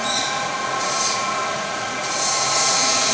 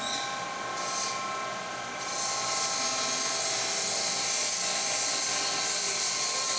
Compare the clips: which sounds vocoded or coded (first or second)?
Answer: first